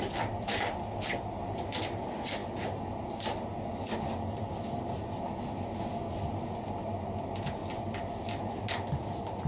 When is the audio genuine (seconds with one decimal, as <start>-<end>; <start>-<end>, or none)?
2.4-6.8; 7.6-8.5